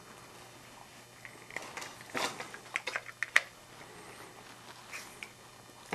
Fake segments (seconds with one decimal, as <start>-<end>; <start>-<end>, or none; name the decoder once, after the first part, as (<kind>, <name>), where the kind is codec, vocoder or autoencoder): none